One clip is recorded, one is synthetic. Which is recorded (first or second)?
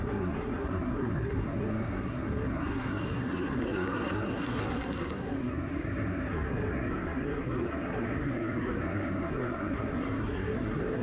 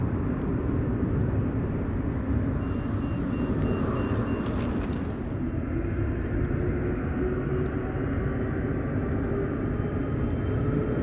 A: second